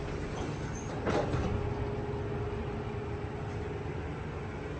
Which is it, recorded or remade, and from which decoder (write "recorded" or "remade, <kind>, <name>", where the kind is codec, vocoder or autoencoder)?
recorded